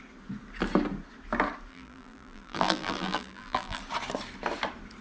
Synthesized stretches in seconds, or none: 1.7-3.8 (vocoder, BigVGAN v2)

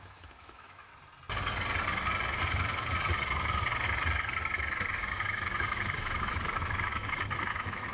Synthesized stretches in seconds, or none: 0.0-0.9 (autoencoder, DAC-VAE); 5.0-7.9

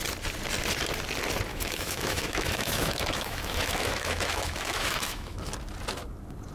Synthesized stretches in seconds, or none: 1.5-5.4 (autoencoder, DAC-VAE)

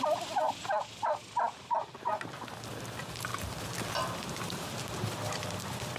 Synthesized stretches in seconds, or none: 0.0-3.3 (vocoder, BigVGAN v2); 3.9-6.0

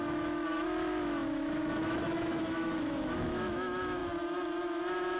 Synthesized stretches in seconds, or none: 0.0-5.2 (autoencoder, DAC-VAE)